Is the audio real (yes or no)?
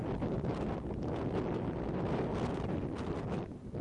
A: yes